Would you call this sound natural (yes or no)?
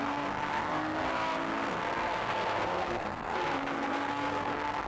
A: no